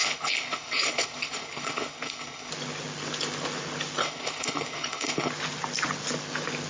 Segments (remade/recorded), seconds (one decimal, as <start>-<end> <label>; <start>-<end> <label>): 0.0-2.5 remade; 2.5-4.0 recorded; 4.0-5.3 remade; 5.3-6.7 recorded